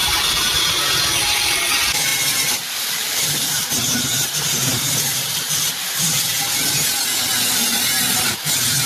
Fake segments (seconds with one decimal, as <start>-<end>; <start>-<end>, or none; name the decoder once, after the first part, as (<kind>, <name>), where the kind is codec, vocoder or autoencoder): 0.0-0.6 (vocoder, BigVGAN v2); 2.1-6.4